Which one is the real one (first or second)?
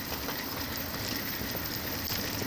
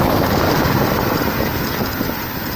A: second